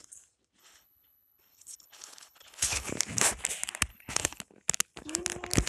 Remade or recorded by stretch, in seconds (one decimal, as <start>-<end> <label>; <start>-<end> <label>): 0.0-0.6 recorded; 0.6-2.9 remade; 2.9-3.9 recorded; 3.9-4.4 remade; 4.4-5.7 recorded